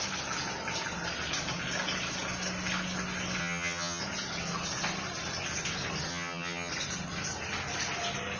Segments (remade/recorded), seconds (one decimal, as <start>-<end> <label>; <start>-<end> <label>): 0.0-3.4 recorded; 3.4-4.0 remade; 4.0-6.1 recorded; 6.1-6.7 remade; 6.7-8.4 recorded